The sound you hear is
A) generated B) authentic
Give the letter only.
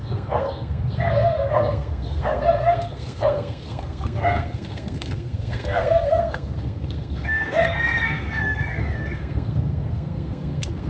A